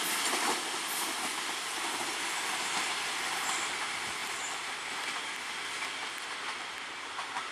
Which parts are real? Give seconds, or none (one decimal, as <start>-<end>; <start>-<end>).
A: 0.0-7.5